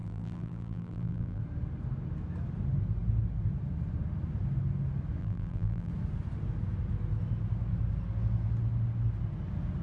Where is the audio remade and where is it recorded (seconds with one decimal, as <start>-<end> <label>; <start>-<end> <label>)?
0.0-1.4 remade; 1.4-5.2 recorded; 5.2-5.9 remade; 5.9-9.8 recorded